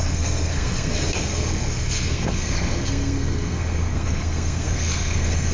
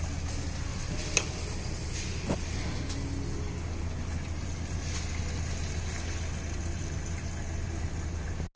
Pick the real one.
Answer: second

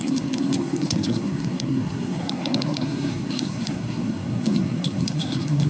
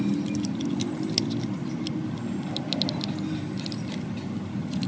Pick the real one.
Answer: second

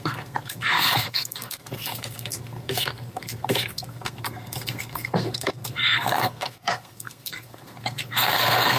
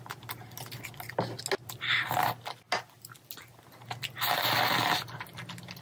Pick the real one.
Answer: second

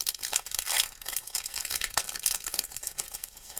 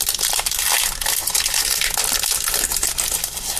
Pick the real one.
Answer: second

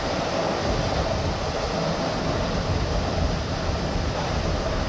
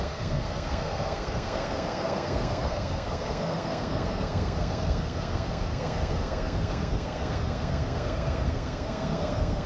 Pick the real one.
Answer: first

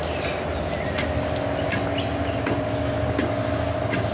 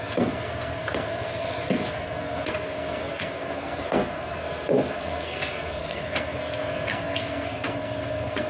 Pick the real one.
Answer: first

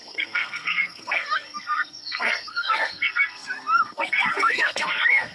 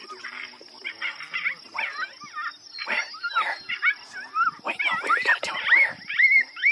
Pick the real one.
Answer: second